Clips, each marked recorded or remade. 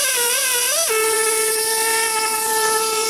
remade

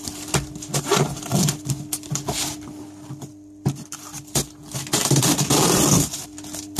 remade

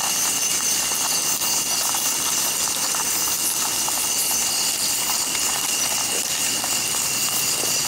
recorded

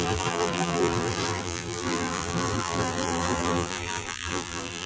remade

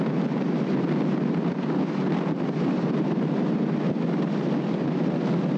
recorded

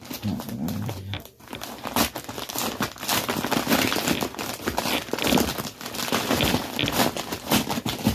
remade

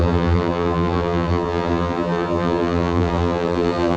remade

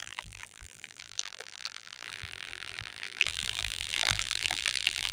remade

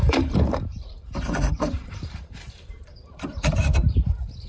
remade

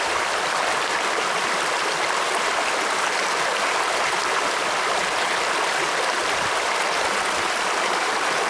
recorded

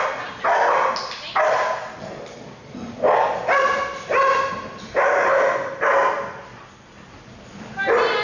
recorded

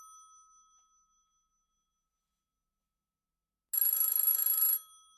recorded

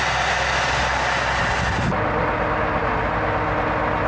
recorded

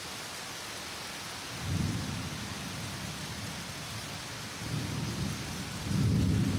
recorded